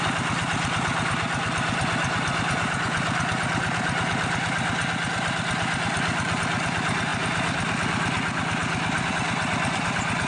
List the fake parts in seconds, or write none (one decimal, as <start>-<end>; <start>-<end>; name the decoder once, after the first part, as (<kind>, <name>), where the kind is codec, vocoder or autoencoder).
none